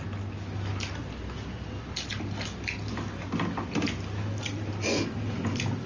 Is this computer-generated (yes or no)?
no